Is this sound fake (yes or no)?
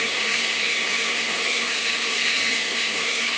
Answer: yes